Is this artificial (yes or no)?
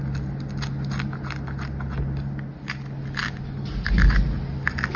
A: no